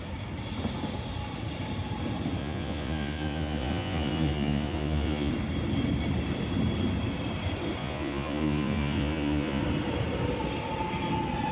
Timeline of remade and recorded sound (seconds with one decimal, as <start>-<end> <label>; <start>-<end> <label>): 0.0-2.4 recorded; 2.4-5.3 remade; 5.3-7.8 recorded; 7.8-9.6 remade; 9.6-11.5 recorded